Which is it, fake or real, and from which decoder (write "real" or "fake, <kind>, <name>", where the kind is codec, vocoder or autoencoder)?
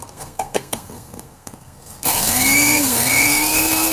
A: fake, codec, SNAC